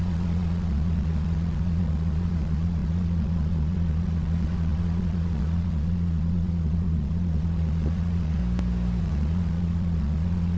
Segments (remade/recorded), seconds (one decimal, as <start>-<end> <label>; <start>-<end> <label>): 0.0-8.4 remade; 8.4-9.0 recorded; 9.0-10.6 remade